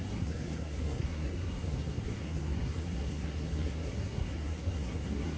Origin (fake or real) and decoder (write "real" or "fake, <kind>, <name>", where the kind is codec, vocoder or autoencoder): fake, codec, SNAC